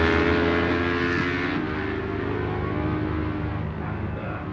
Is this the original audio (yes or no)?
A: yes